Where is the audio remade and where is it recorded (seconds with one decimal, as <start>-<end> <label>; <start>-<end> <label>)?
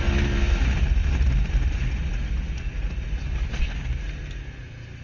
0.0-5.0 recorded